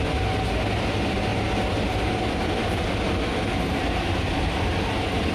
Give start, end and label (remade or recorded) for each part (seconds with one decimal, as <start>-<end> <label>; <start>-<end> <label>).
0.0-5.3 recorded